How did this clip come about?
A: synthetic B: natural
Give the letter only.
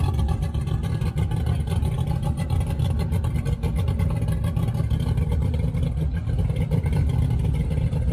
B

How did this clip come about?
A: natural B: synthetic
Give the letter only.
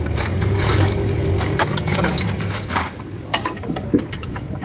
B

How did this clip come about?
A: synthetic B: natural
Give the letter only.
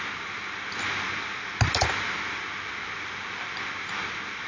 B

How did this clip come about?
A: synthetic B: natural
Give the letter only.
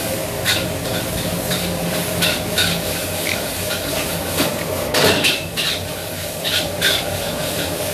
A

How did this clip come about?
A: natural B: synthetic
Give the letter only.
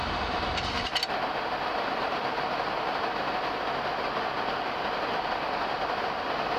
A